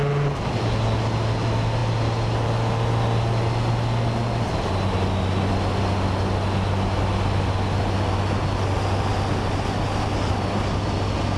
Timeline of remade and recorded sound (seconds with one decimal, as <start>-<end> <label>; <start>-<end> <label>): 0.0-11.4 recorded